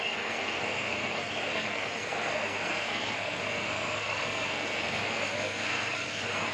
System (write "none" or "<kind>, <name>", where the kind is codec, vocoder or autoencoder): codec, SNAC